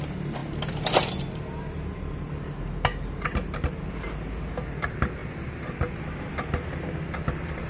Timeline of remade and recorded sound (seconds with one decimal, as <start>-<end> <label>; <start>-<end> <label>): 0.0-7.7 recorded